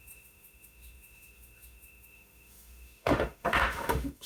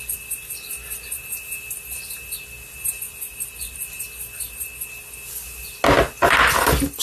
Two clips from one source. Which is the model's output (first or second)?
first